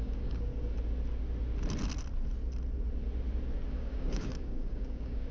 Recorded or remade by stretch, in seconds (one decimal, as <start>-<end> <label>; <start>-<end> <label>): 0.0-0.5 remade; 0.5-3.7 recorded; 3.7-5.3 remade